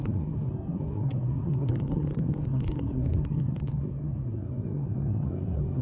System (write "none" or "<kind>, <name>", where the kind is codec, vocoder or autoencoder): codec, SNAC